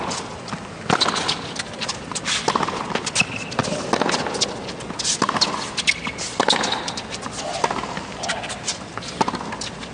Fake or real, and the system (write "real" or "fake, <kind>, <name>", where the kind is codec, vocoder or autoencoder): real